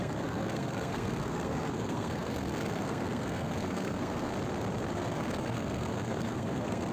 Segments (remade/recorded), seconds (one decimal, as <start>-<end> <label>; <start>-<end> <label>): 0.0-4.3 remade; 4.3-4.9 recorded; 4.9-6.9 remade